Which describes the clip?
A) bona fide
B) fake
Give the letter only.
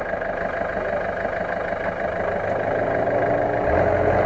A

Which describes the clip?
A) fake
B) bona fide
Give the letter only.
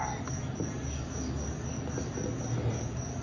B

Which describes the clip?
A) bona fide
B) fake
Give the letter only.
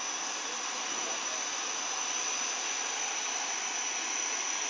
A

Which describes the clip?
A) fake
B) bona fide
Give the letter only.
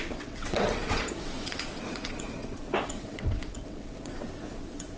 A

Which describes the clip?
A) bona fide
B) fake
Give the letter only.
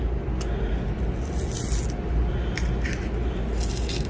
A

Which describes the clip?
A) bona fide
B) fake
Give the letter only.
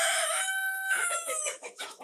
B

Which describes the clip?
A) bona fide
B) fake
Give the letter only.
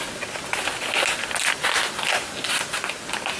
A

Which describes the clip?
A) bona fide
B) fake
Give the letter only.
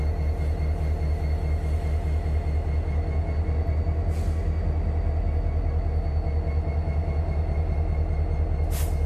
A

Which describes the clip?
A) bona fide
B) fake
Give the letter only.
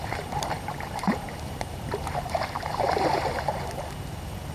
B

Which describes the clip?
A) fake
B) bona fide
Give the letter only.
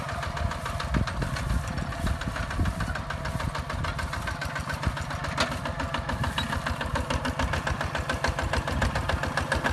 B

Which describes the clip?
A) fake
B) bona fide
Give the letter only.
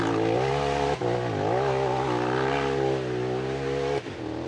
B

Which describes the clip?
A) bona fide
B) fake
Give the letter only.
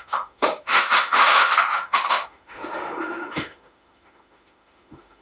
B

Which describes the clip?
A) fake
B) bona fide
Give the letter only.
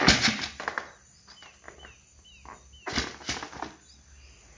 B